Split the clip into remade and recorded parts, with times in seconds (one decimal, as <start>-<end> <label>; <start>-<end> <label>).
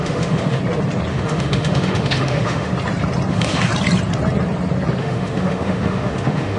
0.0-0.6 remade; 0.6-1.1 recorded; 1.1-2.7 remade; 2.7-3.3 recorded; 3.3-3.7 remade; 3.7-5.0 recorded; 5.0-6.6 remade